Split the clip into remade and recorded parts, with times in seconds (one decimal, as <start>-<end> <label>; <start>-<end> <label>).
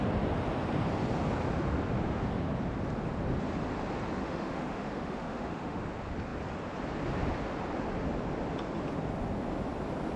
0.0-4.2 recorded; 4.2-5.8 remade; 5.8-10.2 recorded